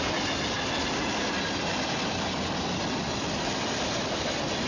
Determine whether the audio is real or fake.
real